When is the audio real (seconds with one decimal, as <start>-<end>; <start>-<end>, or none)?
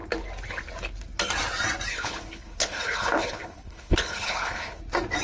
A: 0.0-1.9; 4.8-5.2